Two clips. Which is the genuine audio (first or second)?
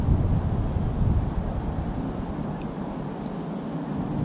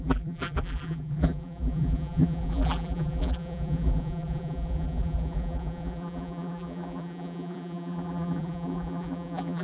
first